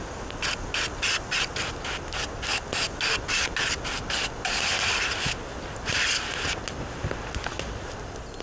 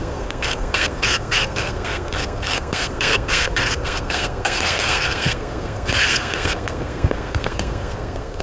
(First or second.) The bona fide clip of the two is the first